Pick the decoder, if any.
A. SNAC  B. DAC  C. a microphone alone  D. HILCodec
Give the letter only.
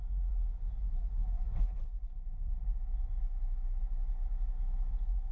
C